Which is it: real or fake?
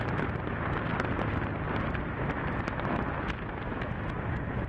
real